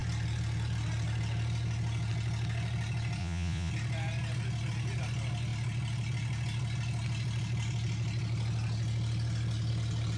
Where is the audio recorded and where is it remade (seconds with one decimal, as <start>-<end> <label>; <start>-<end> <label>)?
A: 0.0-3.2 recorded; 3.2-3.7 remade; 3.7-10.2 recorded